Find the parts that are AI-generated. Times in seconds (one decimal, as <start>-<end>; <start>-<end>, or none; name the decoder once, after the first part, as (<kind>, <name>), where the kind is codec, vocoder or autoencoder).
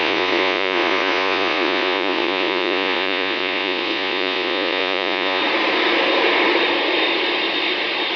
0.0-5.4 (vocoder, Vocos)